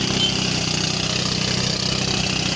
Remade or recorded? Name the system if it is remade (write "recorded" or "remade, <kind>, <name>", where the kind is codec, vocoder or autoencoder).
recorded